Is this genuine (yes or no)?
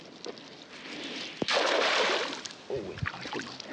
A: yes